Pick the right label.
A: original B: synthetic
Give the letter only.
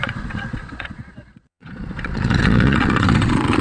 B